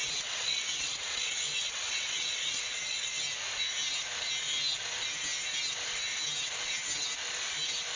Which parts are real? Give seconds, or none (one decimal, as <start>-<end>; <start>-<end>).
3.2-8.0